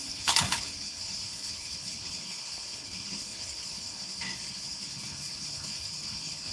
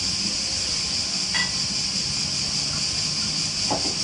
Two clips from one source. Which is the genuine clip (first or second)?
second